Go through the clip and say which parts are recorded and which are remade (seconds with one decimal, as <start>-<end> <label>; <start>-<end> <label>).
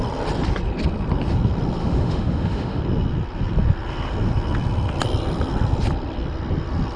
0.0-1.8 recorded; 1.8-2.8 remade; 2.8-7.0 recorded